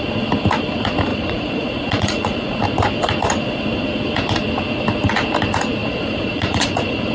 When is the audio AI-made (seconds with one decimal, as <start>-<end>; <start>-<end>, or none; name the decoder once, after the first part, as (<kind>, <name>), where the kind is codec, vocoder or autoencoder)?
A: 1.1-2.6 (vocoder, Vocos); 5.8-7.1

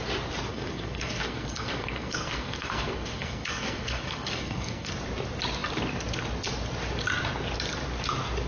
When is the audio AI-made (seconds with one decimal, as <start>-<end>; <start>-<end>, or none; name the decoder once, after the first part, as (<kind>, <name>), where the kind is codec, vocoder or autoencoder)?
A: 0.5-4.9 (codec, SNAC)

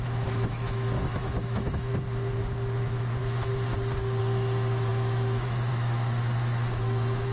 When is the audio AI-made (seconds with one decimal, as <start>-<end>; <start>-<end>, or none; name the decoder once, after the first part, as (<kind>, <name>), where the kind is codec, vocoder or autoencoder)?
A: 0.0-1.9 (autoencoder, DAC-VAE); 2.4-3.5; 4.2-7.3